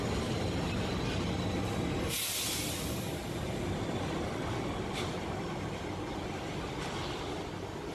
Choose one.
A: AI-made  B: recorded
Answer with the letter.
B